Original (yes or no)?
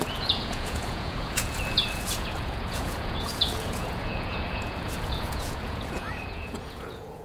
no